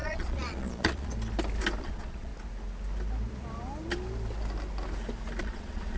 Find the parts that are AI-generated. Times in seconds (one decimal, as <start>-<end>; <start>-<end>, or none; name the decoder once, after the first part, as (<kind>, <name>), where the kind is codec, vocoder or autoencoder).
0.0-1.1 (vocoder, Vocos); 1.8-2.3; 5.4-6.0